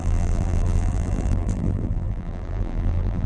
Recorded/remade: remade